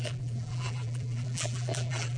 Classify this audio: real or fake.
fake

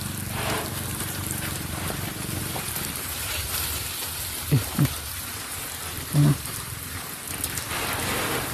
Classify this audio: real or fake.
fake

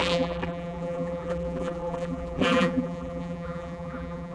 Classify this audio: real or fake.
fake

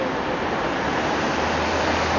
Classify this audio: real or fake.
real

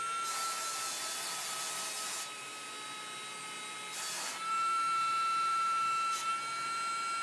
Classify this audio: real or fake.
real